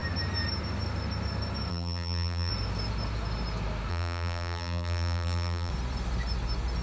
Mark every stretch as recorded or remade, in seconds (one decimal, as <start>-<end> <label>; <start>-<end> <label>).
0.0-1.7 recorded; 1.7-2.5 remade; 2.5-3.9 recorded; 3.9-5.7 remade; 5.7-6.8 recorded